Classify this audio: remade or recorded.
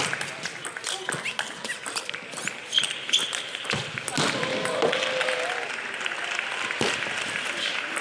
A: recorded